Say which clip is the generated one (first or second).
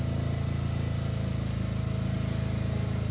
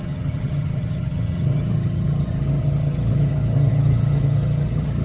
second